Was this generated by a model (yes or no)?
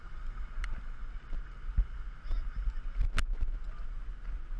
no